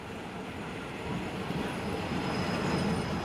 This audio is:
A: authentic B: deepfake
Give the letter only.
A